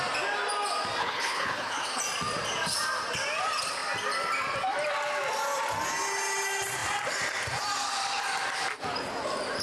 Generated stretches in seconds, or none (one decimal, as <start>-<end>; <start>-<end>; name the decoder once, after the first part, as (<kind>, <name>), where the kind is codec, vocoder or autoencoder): 1.0-2.0 (codec, HILCodec)